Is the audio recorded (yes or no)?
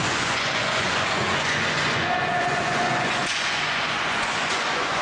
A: no